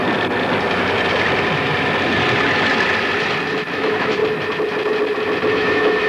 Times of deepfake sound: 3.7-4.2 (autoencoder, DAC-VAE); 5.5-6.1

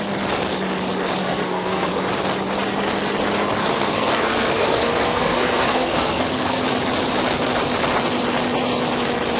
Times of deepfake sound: 1.2-1.9 (codec, SNAC); 3.6-6.6